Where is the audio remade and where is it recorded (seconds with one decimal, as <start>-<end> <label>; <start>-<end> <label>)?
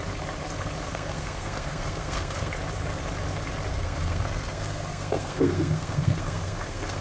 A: 0.0-0.9 recorded; 0.9-2.5 remade; 2.5-3.7 recorded; 3.7-7.0 remade